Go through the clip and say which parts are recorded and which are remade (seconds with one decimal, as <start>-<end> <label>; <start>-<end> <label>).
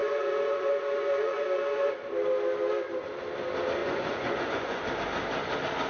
0.0-1.9 remade; 1.9-3.8 recorded; 3.8-4.8 remade; 4.8-5.9 recorded